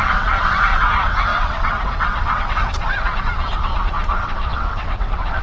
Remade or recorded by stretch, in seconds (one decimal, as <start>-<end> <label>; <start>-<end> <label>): 0.0-5.4 remade